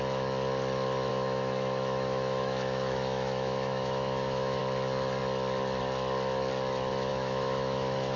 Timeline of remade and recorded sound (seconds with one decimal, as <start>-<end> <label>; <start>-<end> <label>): 0.0-1.1 recorded; 1.1-4.6 remade; 4.6-7.1 recorded; 7.1-8.2 remade